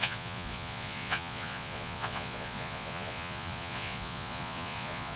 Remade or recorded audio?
remade